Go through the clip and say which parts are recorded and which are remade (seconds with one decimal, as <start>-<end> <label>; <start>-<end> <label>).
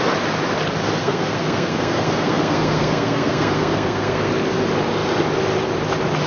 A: 0.0-1.0 recorded; 1.0-4.3 remade; 4.3-6.3 recorded